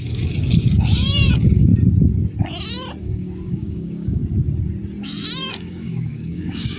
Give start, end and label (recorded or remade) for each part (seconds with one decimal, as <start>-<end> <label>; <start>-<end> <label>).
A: 0.0-1.7 remade; 1.7-3.0 recorded; 3.0-4.2 remade; 4.2-5.5 recorded; 5.5-6.8 remade